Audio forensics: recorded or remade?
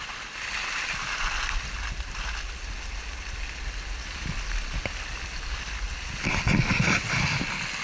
recorded